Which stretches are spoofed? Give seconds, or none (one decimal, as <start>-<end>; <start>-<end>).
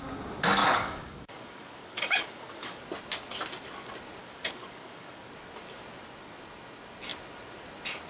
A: 0.6-2.8; 4.2-5.3